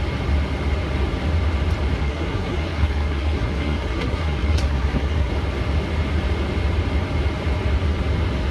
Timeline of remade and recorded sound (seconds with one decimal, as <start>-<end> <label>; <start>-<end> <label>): 0.0-2.0 recorded; 2.0-5.3 remade; 5.3-8.5 recorded